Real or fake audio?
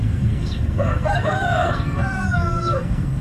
fake